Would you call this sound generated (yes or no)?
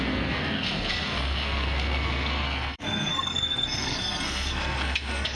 yes